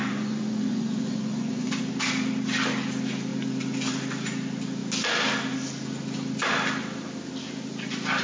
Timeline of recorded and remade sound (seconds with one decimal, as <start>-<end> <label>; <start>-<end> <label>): 0.0-1.8 remade; 1.8-8.2 recorded